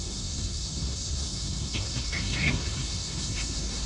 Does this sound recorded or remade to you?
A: remade